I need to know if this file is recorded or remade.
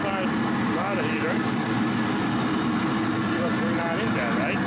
recorded